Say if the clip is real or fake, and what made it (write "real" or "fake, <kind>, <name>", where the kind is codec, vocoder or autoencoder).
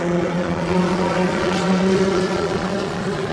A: fake, vocoder, Vocos